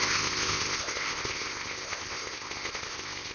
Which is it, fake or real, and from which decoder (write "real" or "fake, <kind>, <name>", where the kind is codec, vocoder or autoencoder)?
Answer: fake, codec, ZipCodec